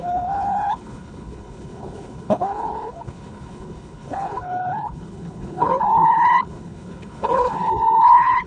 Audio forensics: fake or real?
fake